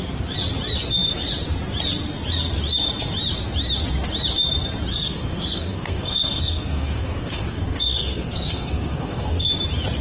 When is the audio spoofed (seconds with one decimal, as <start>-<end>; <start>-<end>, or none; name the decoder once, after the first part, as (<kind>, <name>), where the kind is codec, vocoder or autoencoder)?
4.9-9.5 (codec, SNAC)